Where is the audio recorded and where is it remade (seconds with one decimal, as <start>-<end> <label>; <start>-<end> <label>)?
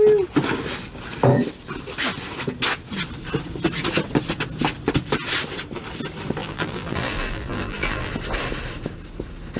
0.0-6.4 recorded; 6.4-8.1 remade; 8.1-9.6 recorded